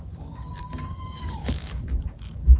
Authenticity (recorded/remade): remade